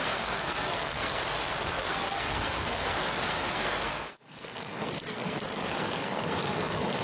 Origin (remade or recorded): remade